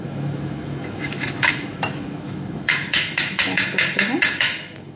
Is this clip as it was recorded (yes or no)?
no